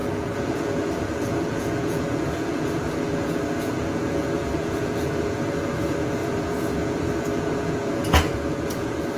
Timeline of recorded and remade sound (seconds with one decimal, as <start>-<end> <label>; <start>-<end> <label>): 0.0-9.2 remade